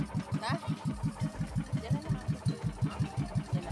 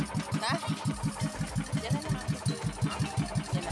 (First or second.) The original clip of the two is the second